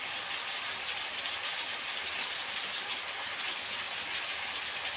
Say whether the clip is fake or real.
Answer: real